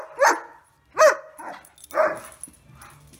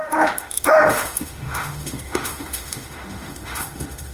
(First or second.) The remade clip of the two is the second